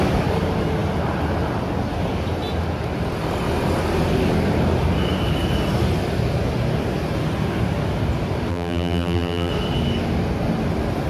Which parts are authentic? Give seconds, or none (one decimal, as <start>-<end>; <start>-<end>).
0.0-8.5; 9.5-11.1